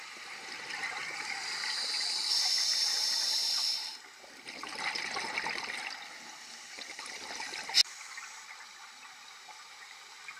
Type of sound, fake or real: real